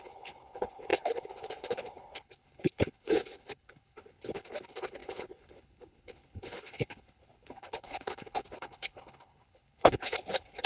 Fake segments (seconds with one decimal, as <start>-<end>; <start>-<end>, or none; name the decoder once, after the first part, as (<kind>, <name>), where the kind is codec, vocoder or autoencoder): 0.0-10.7 (codec, HILCodec)